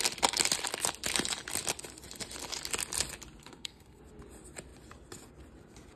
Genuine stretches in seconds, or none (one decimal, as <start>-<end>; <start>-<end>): 0.0-3.4; 4.0-6.0

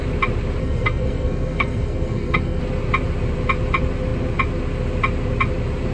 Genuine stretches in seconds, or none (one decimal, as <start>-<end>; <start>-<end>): 0.0-0.6; 2.6-5.9

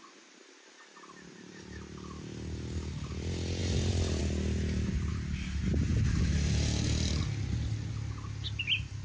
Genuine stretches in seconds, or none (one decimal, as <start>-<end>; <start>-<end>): 0.0-3.6; 4.2-5.1; 7.2-9.0